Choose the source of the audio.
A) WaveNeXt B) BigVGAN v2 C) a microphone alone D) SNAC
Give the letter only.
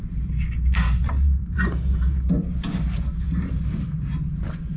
B